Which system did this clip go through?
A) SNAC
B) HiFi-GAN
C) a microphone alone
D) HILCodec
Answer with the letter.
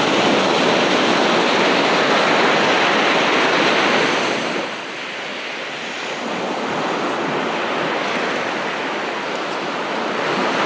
C